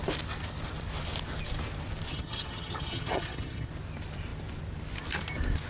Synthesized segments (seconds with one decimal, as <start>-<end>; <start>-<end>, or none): 2.1-3.7